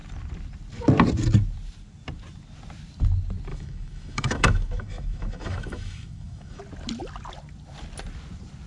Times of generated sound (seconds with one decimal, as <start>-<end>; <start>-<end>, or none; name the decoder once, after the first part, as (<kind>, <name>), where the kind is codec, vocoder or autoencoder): 3.5-6.6 (autoencoder, DAC-VAE)